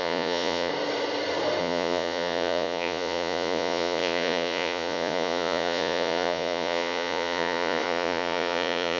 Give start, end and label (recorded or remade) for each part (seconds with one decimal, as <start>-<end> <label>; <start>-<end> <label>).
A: 0.0-0.7 remade; 0.7-1.6 recorded; 1.6-9.0 remade